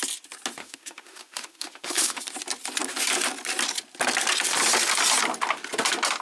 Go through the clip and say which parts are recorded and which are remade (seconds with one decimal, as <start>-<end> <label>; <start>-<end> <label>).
0.0-0.6 recorded; 0.6-2.2 remade; 2.2-6.2 recorded